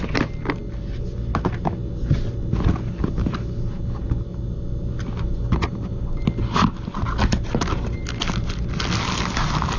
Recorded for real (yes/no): yes